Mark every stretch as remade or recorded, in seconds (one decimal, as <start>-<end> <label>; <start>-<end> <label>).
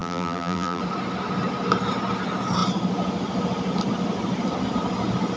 0.0-0.8 remade; 0.8-5.4 recorded